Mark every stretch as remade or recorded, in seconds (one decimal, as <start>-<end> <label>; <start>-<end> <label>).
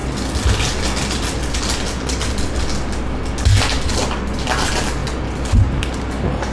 0.0-6.5 recorded